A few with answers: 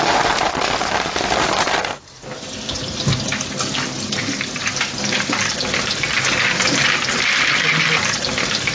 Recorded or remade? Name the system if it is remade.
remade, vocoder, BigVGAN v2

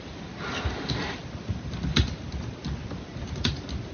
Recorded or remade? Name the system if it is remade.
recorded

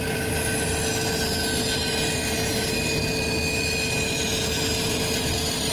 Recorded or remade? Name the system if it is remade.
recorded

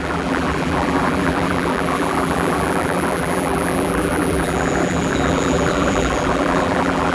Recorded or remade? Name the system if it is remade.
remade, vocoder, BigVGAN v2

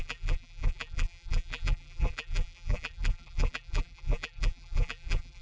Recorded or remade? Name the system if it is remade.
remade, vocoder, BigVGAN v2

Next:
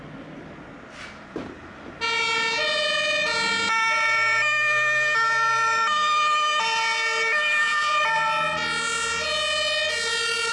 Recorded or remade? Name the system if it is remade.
recorded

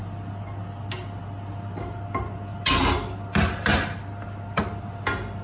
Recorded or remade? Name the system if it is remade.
recorded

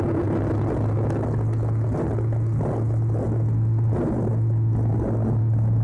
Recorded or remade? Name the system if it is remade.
recorded